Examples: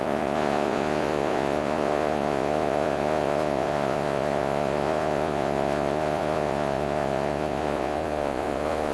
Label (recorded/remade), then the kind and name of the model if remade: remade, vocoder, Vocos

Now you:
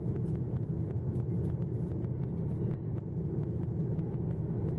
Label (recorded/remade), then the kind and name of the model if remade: recorded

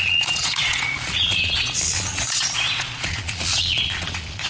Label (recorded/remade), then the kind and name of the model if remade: remade, vocoder, Vocos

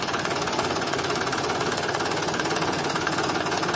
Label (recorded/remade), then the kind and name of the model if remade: remade, vocoder, Vocos